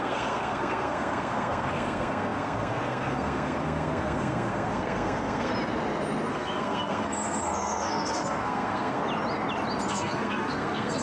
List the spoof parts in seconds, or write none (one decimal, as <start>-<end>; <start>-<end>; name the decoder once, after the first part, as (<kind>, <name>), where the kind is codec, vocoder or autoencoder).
0.0-5.5 (codec, SNAC); 6.3-9.0; 9.9-11.0